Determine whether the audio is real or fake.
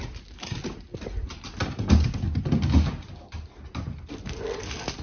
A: real